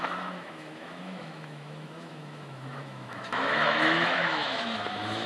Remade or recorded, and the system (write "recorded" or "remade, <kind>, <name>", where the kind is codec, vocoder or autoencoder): remade, autoencoder, DAC-VAE